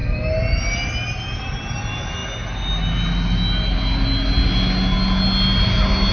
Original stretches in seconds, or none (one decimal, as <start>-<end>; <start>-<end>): 0.0-6.1